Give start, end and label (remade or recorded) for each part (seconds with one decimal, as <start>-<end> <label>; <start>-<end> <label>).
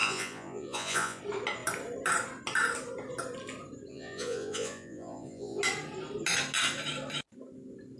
0.0-1.2 remade; 1.2-3.9 recorded; 3.9-5.6 remade; 5.6-8.0 recorded